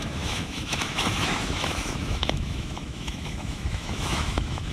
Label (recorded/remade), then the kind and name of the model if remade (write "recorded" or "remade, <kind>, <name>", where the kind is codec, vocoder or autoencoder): remade, autoencoder, DAC-VAE